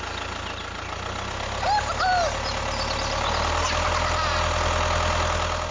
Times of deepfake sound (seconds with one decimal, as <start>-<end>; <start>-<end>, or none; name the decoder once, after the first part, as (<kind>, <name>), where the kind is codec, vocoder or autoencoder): none